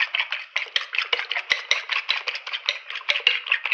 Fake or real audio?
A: real